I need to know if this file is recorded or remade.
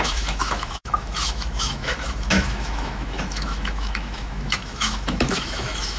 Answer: remade